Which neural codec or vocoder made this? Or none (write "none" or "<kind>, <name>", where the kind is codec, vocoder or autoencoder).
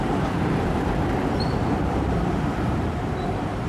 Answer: vocoder, BigVGAN v2